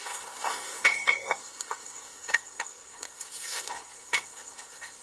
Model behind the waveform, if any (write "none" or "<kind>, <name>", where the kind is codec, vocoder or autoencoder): codec, SNAC